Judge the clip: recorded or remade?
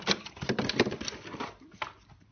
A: recorded